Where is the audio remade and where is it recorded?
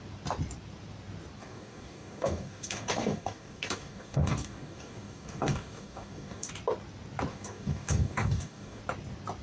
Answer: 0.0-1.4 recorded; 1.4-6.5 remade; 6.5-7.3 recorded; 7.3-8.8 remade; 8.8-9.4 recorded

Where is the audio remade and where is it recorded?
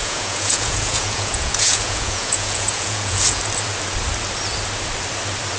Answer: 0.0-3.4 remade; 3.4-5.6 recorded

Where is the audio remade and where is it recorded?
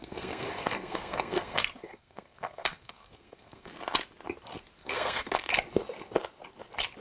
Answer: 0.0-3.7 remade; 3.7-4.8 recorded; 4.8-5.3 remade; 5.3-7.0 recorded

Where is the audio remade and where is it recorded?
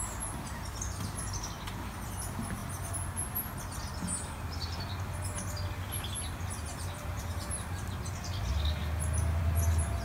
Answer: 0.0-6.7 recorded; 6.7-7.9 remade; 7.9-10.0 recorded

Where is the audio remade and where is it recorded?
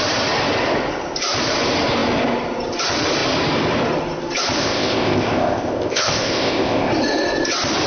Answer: 0.0-4.6 recorded; 4.6-6.9 remade; 6.9-7.9 recorded